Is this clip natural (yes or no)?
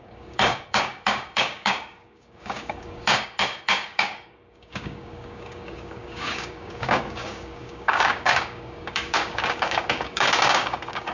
no